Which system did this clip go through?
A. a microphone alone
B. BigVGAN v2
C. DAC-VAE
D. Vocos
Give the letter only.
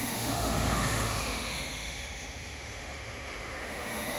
C